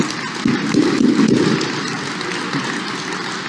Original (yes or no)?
yes